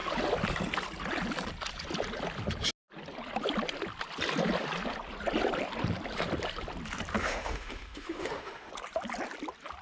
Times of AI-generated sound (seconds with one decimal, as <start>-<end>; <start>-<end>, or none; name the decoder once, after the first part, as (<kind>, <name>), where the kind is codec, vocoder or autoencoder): 7.2-8.7 (autoencoder, DAC-VAE)